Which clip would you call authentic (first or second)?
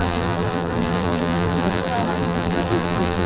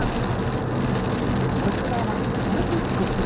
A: second